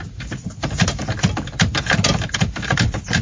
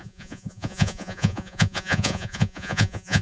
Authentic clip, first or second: first